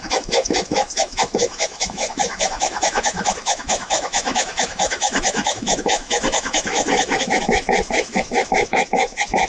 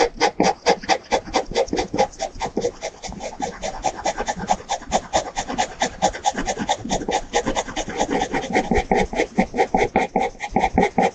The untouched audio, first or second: second